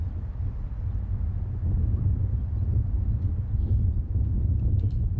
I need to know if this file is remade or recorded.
recorded